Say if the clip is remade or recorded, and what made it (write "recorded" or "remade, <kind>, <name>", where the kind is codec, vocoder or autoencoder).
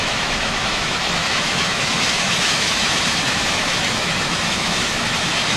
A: remade, autoencoder, DAC-VAE